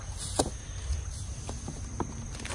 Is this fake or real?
real